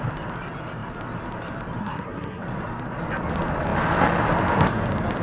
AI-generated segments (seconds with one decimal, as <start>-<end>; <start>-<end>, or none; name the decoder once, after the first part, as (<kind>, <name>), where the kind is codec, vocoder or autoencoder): 1.8-2.4 (codec, SNAC)